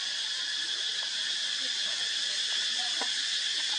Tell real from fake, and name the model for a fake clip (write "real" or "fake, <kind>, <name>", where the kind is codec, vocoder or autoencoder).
real